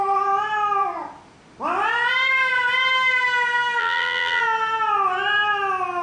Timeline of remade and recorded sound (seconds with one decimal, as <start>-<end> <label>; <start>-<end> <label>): 0.0-3.8 recorded; 3.8-4.4 remade; 4.4-6.0 recorded